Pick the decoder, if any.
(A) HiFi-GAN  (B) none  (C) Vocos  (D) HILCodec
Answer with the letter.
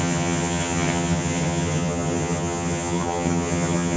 A